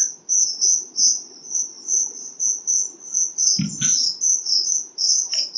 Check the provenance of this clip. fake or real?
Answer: real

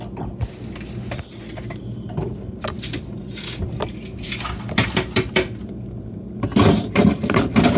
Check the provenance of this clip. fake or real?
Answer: real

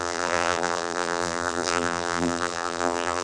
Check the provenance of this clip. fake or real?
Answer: fake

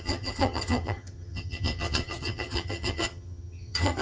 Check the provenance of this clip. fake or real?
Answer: fake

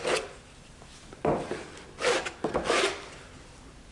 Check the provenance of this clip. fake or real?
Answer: real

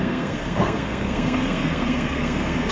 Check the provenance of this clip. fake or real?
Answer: fake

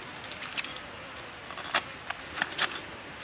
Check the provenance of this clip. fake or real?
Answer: real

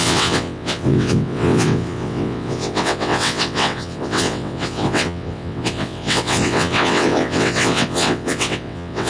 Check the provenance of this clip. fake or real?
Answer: fake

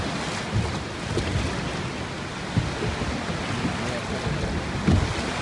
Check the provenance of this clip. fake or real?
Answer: real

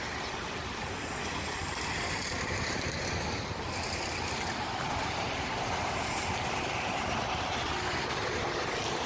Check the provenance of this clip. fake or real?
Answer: real